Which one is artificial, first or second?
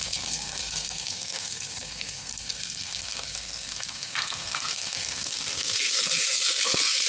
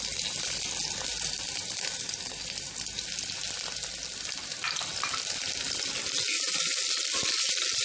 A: first